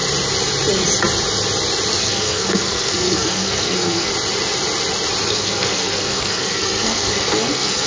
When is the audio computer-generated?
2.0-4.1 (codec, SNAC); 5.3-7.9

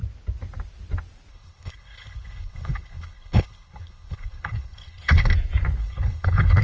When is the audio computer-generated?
1.3-5.3 (codec, HILCodec); 5.8-6.6

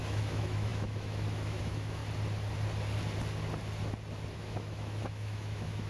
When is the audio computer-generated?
0.0-2.0 (autoencoder, DAC-VAE); 4.3-5.9

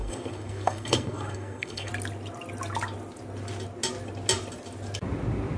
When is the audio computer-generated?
0.0-1.9 (codec, SNAC)